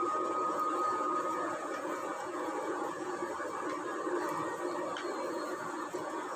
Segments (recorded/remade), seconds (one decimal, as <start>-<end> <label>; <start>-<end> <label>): 0.0-3.2 remade; 3.2-5.3 recorded; 5.3-6.4 remade

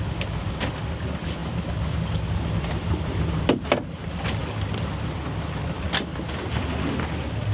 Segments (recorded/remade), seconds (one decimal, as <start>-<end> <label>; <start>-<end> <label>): 0.0-7.5 recorded